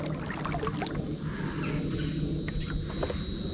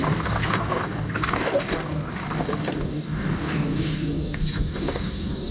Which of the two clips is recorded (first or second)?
first